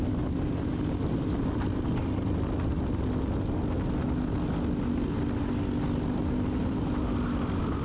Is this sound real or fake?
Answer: real